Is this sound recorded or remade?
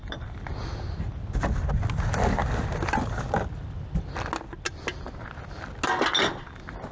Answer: recorded